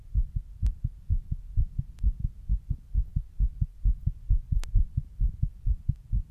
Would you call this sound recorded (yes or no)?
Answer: yes